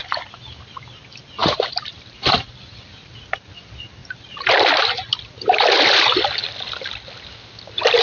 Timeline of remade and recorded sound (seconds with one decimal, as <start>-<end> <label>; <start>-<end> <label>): 0.0-8.0 remade